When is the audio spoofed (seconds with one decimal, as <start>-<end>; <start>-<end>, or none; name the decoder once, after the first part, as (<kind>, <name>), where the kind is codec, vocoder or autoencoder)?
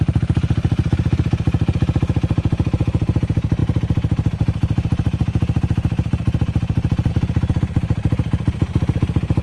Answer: none